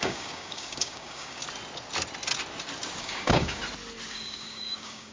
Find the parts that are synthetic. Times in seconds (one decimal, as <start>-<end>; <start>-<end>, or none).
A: 0.0-1.4; 3.0-3.6; 4.1-5.1